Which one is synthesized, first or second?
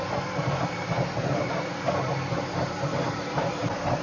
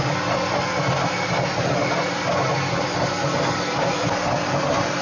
first